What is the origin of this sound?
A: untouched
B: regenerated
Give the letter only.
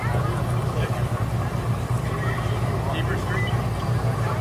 A